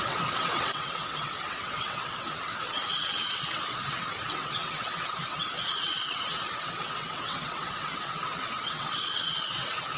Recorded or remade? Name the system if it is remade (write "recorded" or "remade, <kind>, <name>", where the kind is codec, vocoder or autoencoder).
remade, vocoder, WaveNeXt